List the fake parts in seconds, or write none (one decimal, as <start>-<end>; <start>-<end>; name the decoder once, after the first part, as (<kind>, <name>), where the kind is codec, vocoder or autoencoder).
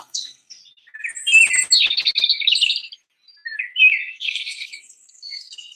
0.0-0.6 (codec, SNAC); 4.1-5.8